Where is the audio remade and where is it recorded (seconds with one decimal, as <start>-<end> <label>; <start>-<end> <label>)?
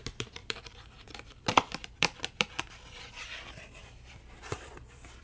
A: 0.0-5.2 remade